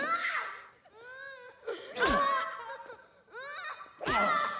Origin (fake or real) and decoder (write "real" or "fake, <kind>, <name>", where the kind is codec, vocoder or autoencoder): real